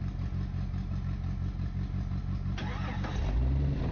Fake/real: real